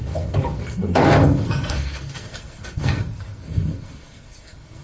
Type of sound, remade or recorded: remade